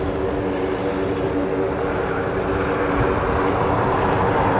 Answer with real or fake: real